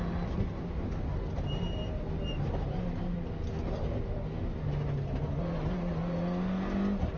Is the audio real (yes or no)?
yes